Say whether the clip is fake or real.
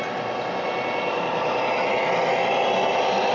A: real